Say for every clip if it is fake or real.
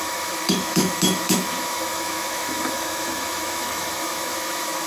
fake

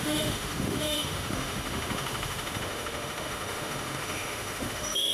fake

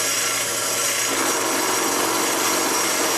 real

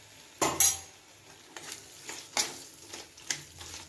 real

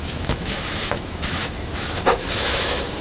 fake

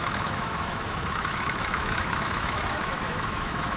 fake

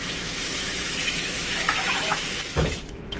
fake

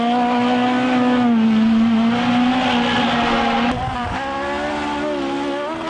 real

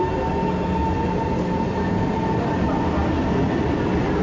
real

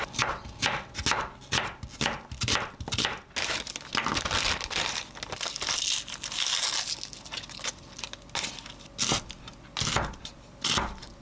real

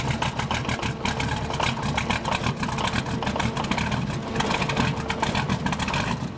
real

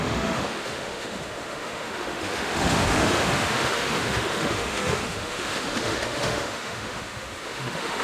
fake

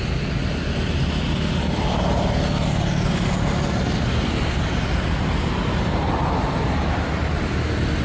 real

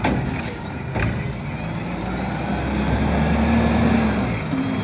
real